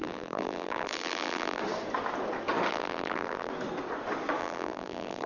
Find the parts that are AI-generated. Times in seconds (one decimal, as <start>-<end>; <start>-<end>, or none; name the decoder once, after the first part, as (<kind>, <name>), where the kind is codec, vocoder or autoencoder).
0.0-1.6 (vocoder, BigVGAN v2); 2.7-3.5; 4.4-5.3